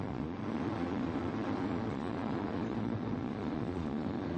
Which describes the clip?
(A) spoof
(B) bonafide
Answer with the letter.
A